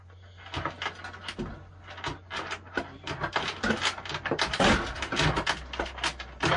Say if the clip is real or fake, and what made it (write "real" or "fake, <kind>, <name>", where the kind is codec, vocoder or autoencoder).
real